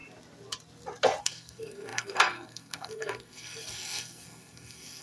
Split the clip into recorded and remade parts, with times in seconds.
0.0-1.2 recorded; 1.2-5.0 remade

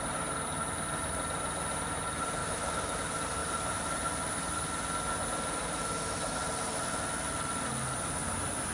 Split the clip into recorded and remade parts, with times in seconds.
0.0-2.4 recorded; 2.4-3.0 remade; 3.0-5.8 recorded; 5.8-6.4 remade; 6.4-8.7 recorded